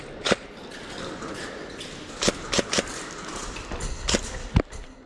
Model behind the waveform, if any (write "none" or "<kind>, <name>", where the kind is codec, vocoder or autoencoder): none